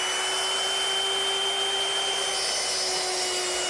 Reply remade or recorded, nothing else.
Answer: recorded